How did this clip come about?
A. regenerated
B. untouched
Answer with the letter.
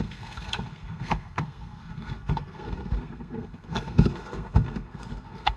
A